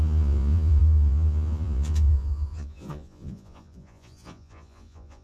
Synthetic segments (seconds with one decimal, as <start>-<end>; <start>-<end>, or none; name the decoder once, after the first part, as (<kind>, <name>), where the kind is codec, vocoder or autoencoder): 0.0-5.2 (vocoder, Vocos)

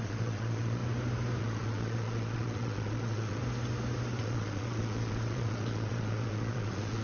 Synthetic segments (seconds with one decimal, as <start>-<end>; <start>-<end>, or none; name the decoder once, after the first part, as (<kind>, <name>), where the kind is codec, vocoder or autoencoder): 0.0-0.8 (vocoder, Vocos); 1.4-3.4; 4.2-7.0

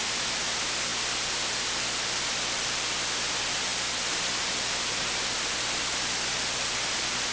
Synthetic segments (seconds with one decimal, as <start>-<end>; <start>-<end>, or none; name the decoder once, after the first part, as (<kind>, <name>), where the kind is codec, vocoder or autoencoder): none

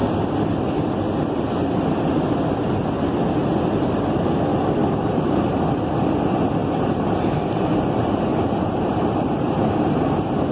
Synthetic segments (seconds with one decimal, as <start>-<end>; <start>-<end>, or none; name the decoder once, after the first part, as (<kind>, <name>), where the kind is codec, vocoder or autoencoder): 4.8-5.3 (vocoder, BigVGAN v2); 6.6-7.7; 8.3-10.0

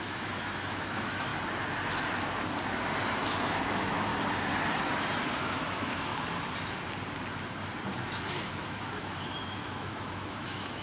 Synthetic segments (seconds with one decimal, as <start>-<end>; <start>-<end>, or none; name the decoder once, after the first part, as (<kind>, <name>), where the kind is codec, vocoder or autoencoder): 0.0-1.3 (autoencoder, DAC-VAE); 3.4-4.1; 5.4-6.1; 8.1-10.8

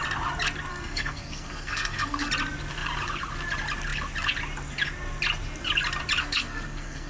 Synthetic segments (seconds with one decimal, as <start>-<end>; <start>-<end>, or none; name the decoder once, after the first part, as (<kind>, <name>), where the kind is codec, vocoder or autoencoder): 0.7-2.3 (codec, SNAC); 6.2-7.1

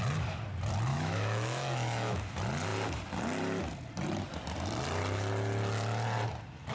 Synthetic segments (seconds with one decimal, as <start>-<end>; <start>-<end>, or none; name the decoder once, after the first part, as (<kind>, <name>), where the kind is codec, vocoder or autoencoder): 0.9-2.2 (autoencoder, DAC-VAE)

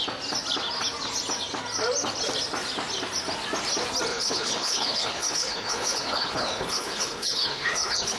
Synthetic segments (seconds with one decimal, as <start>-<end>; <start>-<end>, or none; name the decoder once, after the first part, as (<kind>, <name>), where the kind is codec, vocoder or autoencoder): 4.1-8.2 (codec, HILCodec)